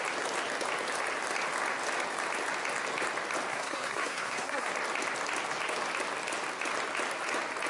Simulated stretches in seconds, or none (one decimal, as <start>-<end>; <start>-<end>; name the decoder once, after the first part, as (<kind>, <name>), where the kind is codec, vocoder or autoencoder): 3.5-4.7 (codec, SNAC)